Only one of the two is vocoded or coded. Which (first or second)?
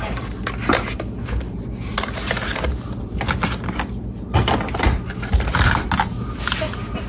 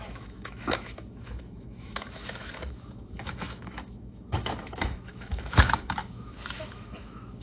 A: second